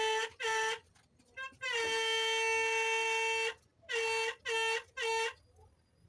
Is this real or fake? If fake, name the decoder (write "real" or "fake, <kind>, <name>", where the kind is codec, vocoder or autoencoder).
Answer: real